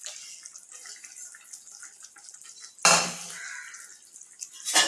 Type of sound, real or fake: real